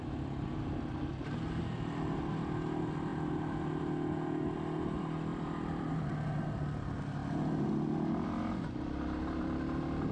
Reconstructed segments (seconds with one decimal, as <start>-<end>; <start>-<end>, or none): 5.3-6.0; 7.2-7.7